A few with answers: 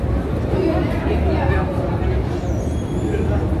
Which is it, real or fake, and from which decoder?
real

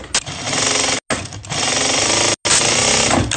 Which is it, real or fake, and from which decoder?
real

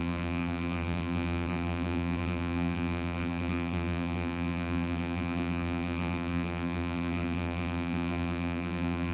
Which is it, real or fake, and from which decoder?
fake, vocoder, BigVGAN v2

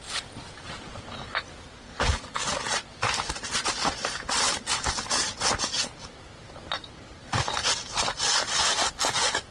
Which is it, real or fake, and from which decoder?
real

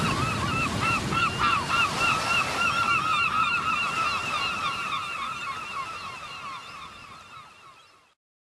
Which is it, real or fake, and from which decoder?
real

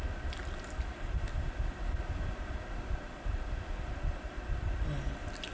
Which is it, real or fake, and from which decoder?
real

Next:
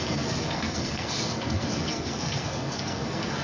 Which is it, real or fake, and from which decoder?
fake, codec, SNAC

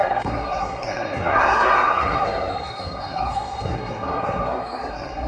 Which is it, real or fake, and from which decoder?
fake, codec, SNAC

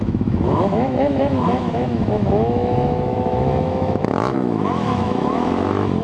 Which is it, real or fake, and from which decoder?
fake, autoencoder, DAC-VAE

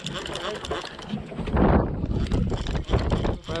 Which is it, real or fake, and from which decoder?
real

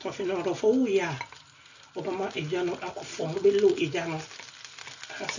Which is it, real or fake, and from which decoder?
real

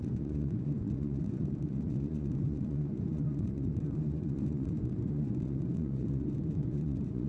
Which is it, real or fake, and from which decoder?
fake, vocoder, Vocos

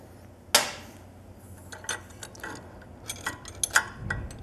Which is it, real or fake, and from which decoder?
real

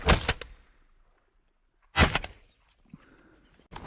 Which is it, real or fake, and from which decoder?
real